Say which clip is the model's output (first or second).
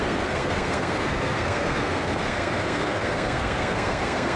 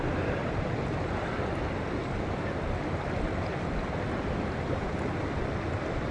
first